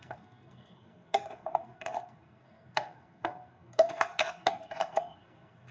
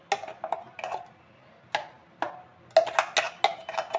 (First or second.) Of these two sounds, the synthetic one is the first